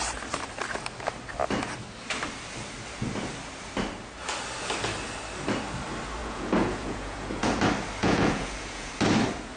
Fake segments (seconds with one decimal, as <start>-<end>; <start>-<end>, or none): 6.2-7.6; 8.0-8.9